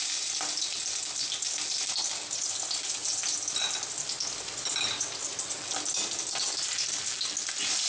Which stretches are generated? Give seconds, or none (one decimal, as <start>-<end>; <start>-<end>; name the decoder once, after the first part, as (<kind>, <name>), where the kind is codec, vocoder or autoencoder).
none